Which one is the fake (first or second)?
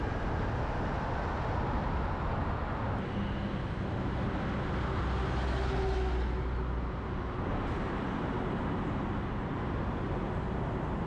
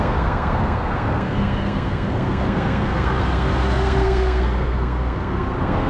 second